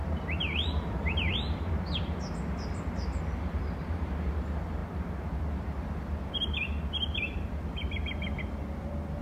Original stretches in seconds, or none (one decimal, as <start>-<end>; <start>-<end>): none